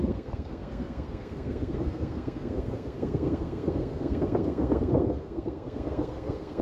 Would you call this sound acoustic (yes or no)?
no